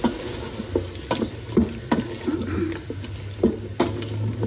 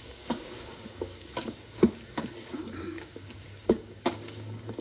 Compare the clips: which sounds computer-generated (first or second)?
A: second